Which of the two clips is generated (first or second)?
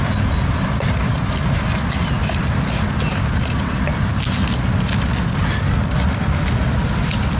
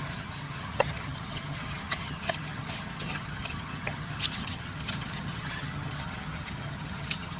second